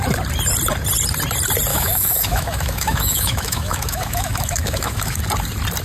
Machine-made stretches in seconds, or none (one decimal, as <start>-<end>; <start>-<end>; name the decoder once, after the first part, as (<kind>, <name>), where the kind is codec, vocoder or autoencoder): 1.7-5.2 (autoencoder, DAC-VAE)